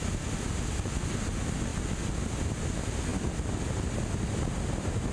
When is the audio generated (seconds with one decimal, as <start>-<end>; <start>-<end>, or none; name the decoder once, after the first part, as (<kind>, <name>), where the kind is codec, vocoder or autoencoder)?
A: none